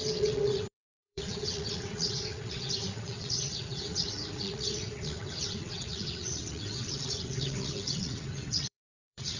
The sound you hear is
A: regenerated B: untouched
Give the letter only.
A